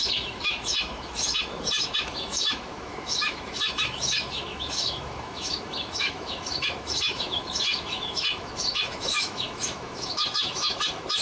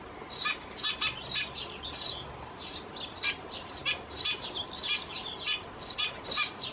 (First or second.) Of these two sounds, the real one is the second